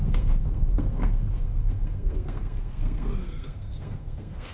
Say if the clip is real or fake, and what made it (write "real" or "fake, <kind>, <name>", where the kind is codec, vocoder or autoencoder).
fake, codec, SNAC